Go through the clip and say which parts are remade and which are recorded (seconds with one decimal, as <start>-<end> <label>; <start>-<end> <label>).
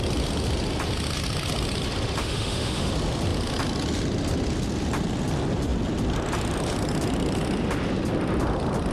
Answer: 0.0-2.2 recorded; 2.2-2.9 remade; 2.9-8.9 recorded